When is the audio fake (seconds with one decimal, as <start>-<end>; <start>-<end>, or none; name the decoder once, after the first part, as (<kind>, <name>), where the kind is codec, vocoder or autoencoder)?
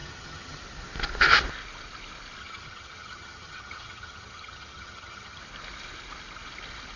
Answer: 0.0-0.6 (vocoder, HiFi-GAN); 2.4-5.4